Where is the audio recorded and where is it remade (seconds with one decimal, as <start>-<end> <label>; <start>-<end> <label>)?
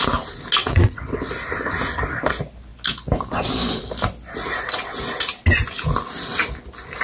0.0-0.6 recorded; 0.6-1.3 remade; 1.3-7.0 recorded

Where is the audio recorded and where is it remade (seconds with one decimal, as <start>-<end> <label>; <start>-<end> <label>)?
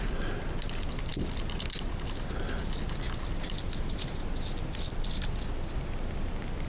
0.0-6.7 recorded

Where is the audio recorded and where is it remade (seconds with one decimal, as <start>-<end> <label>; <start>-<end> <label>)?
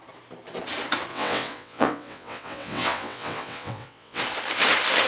0.0-1.1 recorded; 1.1-4.2 remade; 4.2-5.1 recorded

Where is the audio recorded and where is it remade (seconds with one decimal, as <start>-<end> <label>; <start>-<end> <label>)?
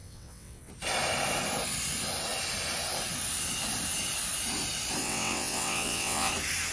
0.0-0.7 remade; 0.7-5.0 recorded; 5.0-6.3 remade; 6.3-6.7 recorded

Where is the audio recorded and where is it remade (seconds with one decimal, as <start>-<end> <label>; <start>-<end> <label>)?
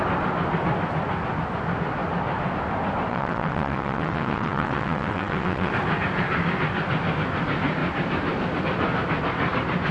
0.0-3.1 recorded; 3.1-5.7 remade; 5.7-9.9 recorded